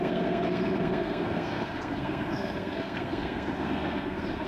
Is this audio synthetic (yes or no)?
yes